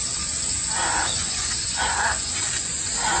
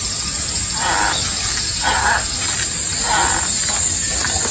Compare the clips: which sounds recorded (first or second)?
second